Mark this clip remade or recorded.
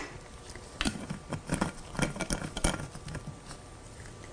recorded